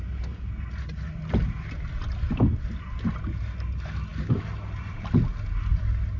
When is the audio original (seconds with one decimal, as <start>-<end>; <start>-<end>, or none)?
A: 0.0-6.2